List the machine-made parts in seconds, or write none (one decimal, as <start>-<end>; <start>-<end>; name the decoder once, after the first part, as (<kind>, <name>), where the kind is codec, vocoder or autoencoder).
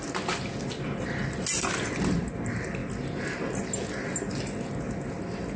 none